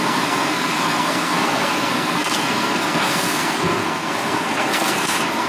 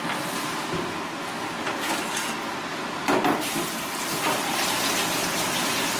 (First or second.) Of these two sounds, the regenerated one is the first